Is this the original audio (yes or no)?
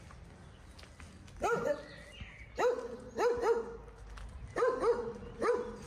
yes